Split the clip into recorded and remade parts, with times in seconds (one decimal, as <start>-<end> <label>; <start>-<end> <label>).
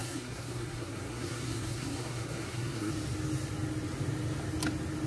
0.0-2.9 remade; 2.9-5.1 recorded